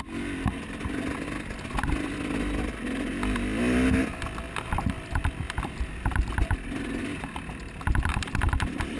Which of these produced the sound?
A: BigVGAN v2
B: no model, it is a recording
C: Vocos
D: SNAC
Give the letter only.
B